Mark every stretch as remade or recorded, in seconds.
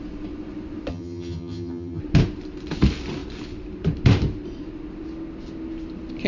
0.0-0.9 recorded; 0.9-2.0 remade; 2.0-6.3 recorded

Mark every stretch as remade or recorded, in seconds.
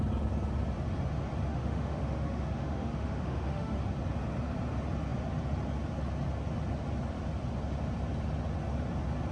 0.0-1.5 recorded; 1.5-3.8 remade; 3.8-9.3 recorded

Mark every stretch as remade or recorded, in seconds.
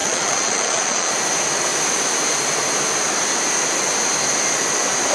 0.0-1.1 remade; 1.1-5.1 recorded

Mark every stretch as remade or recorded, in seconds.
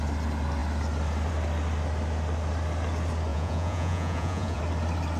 0.0-3.3 recorded; 3.3-4.6 remade; 4.6-5.2 recorded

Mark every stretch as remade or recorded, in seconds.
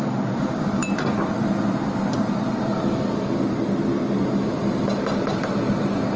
0.0-6.2 recorded